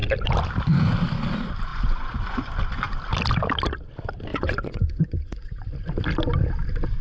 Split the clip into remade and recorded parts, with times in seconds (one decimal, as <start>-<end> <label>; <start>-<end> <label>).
0.0-1.7 recorded; 1.7-2.5 remade; 2.5-4.3 recorded; 4.3-5.7 remade; 5.7-7.0 recorded